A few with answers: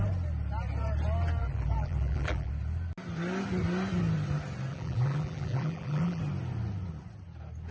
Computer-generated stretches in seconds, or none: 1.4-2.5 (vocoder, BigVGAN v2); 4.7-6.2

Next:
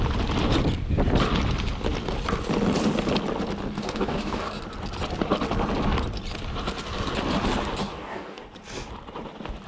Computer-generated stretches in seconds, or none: 3.8-4.5 (codec, DAC); 7.8-8.4

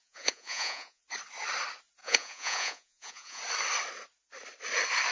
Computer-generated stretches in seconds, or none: 0.0-1.0 (vocoder, Vocos); 2.0-3.4

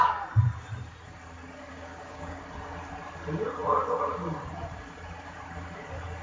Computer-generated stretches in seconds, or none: 1.7-2.4 (codec, DAC)

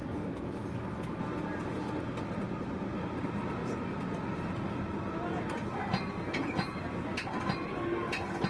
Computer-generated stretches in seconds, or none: none

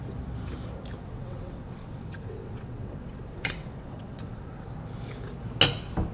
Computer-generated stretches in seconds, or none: 1.0-4.7 (vocoder, WaveNeXt)

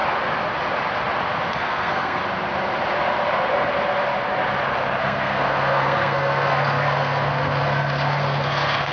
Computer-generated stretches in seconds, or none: 1.5-2.2 (codec, SNAC); 5.0-8.9